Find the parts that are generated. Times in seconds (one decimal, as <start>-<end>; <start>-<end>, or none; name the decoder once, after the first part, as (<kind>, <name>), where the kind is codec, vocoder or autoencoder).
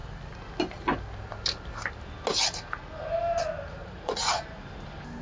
3.8-4.4 (vocoder, Vocos)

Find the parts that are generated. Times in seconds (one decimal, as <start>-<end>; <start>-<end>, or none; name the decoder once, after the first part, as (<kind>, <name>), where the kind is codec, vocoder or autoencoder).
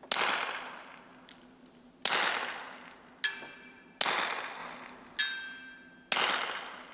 none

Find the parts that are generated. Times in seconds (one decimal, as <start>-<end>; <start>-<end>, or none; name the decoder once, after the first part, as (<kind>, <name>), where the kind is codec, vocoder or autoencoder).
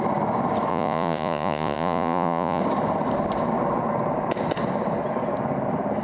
0.7-2.6 (vocoder, Vocos)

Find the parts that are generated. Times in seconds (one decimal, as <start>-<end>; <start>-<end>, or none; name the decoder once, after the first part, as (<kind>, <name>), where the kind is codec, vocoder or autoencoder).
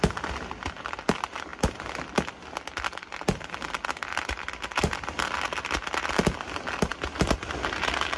none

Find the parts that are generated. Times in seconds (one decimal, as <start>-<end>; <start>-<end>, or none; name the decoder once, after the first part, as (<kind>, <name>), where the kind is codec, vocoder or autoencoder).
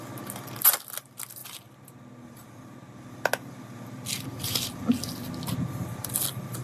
none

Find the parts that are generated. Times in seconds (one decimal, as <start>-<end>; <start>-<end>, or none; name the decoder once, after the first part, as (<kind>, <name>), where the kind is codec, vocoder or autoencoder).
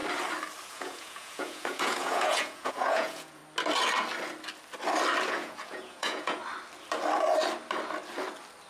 0.7-3.4 (vocoder, Vocos); 5.3-6.4